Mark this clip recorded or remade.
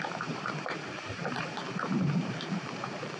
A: remade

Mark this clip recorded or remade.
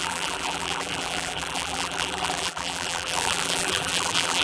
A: remade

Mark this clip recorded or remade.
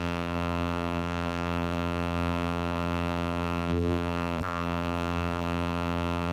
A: remade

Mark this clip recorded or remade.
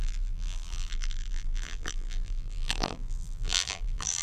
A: remade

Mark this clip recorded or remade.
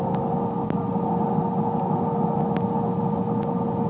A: recorded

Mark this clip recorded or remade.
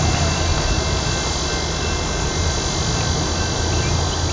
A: recorded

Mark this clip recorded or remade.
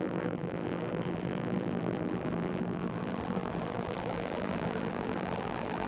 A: remade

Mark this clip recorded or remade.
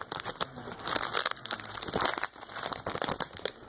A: recorded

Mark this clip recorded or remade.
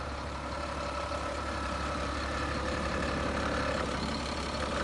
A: remade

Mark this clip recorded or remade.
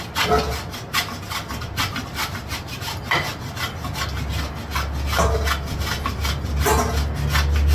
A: recorded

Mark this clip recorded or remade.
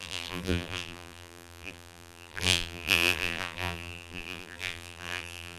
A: remade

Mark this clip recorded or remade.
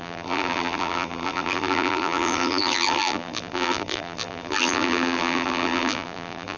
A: remade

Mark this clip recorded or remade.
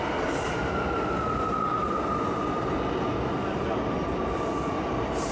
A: recorded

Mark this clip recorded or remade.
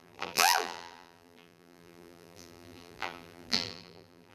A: remade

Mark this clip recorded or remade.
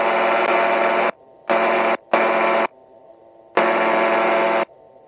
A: recorded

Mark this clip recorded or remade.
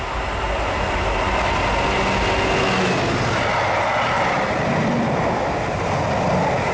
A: recorded